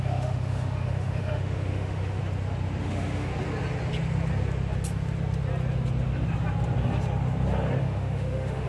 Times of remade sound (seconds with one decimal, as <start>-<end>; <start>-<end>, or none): 0.0-2.2; 2.8-3.3; 7.8-8.7